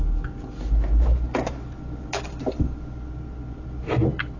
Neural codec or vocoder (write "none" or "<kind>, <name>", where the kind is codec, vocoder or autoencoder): none